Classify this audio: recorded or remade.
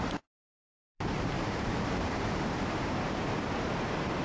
remade